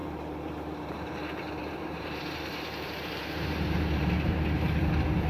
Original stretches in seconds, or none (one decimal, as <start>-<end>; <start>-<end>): 1.1-1.6; 4.8-5.3